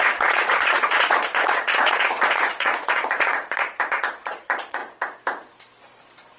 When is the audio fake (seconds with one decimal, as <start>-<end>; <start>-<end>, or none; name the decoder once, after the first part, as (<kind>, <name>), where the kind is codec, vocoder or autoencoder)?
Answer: 0.0-4.8 (vocoder, Vocos)